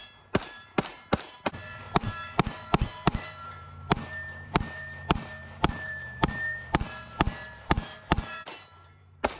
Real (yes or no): no